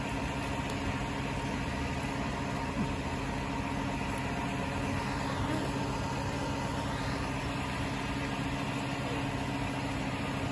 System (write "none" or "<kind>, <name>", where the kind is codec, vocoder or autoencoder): none